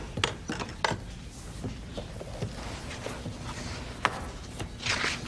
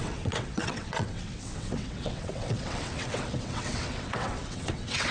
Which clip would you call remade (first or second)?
second